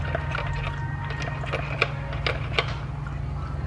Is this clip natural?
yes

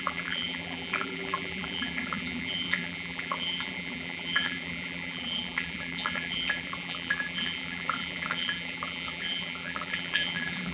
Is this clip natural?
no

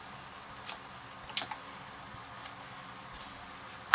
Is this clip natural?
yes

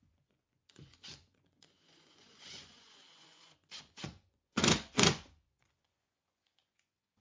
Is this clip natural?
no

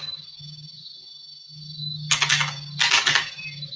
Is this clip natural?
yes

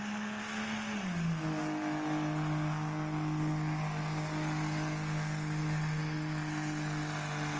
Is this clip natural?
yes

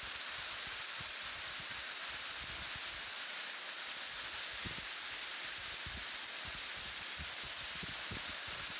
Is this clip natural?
yes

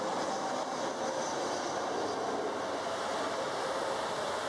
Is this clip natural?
yes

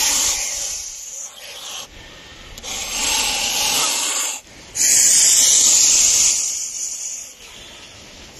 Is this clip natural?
yes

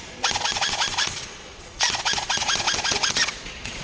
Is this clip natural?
no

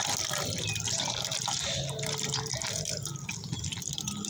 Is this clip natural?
yes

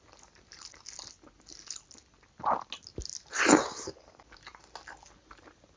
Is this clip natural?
yes